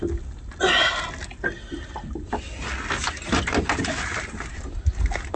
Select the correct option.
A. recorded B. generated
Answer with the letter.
A